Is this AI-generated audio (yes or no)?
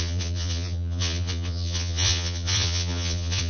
yes